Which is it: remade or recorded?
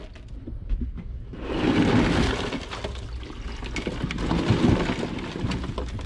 recorded